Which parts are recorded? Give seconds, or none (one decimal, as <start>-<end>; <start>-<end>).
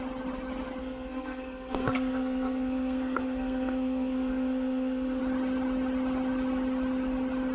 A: 0.0-0.8; 5.2-7.5